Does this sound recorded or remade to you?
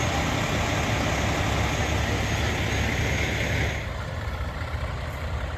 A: recorded